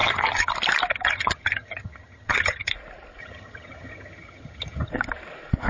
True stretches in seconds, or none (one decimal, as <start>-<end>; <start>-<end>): 0.5-0.9; 2.7-3.2; 4.9-5.7